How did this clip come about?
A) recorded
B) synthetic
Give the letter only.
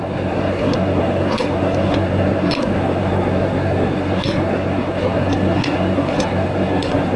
B